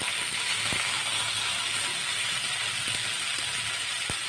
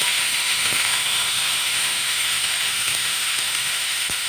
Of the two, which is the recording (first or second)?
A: first